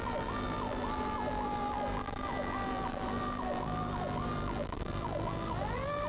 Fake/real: fake